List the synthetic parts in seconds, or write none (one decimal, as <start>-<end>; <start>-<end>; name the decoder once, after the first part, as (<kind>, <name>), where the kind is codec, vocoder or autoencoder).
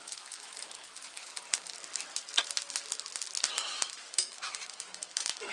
0.0-1.3 (autoencoder, DAC-VAE); 3.5-5.5